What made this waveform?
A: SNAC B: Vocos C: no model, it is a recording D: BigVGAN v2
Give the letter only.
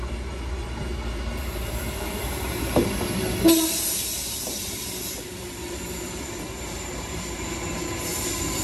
D